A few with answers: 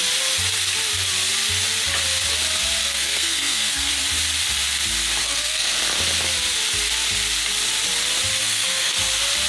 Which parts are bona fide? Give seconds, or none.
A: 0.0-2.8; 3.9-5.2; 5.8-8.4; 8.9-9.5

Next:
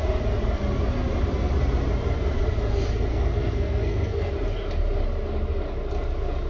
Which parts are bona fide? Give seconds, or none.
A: 0.0-3.1; 4.3-6.5

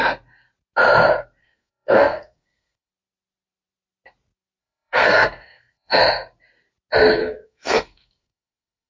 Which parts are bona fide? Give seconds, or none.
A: 0.0-1.4; 2.9-4.6; 6.0-7.2

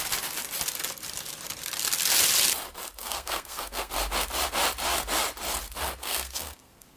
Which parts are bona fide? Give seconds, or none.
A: 0.0-3.0; 3.9-6.0

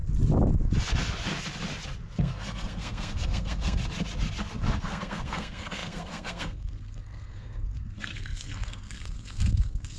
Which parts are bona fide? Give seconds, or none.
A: 0.0-2.2; 3.8-4.8

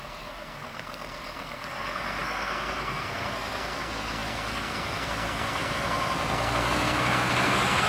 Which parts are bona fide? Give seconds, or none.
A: none

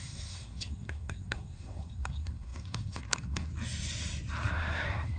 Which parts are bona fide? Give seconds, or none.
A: 3.5-4.5

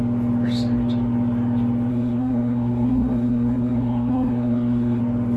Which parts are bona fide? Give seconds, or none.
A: 0.0-1.9; 5.0-5.4